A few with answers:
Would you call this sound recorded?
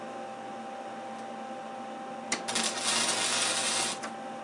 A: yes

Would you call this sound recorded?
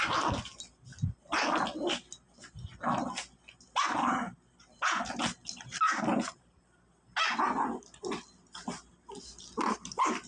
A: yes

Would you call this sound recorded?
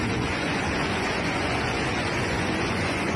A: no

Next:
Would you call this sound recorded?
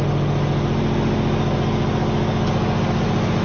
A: yes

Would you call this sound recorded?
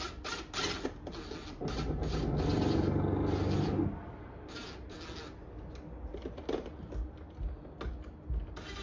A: yes